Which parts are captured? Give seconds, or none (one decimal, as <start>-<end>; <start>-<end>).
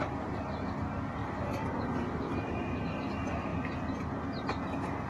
0.0-1.2; 2.5-5.1